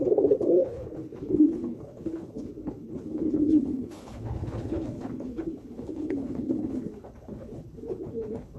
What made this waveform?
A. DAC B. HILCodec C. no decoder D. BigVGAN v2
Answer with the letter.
B